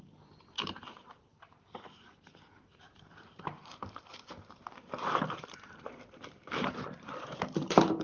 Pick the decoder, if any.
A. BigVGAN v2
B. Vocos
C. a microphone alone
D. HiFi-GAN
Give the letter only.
A